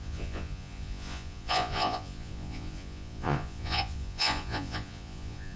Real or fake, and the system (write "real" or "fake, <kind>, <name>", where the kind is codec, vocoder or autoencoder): fake, vocoder, Vocos